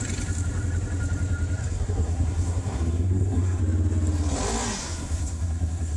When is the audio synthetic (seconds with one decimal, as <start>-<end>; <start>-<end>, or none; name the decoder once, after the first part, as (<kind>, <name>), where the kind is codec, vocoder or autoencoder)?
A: 1.6-3.6 (codec, SNAC); 4.8-6.0